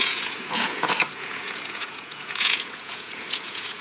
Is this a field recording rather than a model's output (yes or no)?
no